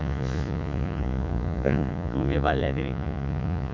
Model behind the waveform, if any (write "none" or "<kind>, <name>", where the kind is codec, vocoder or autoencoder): vocoder, Vocos